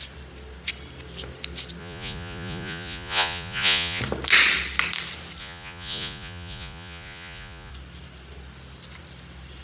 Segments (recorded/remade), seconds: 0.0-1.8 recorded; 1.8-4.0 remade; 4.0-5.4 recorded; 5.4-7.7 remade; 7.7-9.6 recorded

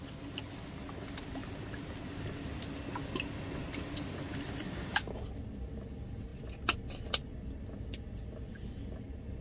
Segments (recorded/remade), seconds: 0.0-9.4 recorded

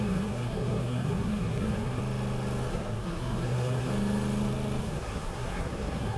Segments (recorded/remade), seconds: 0.0-2.0 remade; 2.0-2.7 recorded; 2.7-3.9 remade; 3.9-4.8 recorded; 4.8-6.2 remade

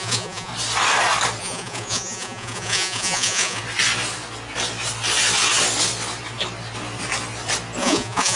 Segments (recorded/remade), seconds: 0.0-0.5 remade; 0.5-1.4 recorded; 1.4-3.6 remade; 3.6-7.8 recorded; 7.8-8.4 remade

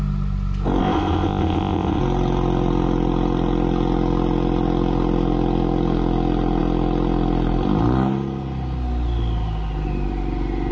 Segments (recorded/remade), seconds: 0.0-0.8 recorded; 0.8-2.0 remade; 2.0-10.7 recorded